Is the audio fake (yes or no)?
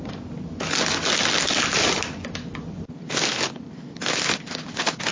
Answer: no